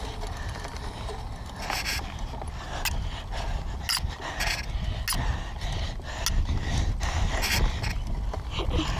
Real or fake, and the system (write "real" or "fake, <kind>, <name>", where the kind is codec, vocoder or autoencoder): real